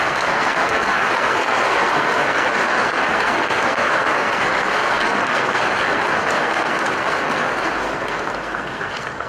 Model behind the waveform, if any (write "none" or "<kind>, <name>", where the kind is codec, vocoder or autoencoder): codec, SNAC